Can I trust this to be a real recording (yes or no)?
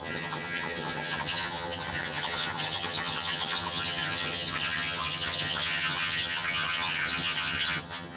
no